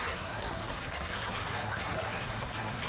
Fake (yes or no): yes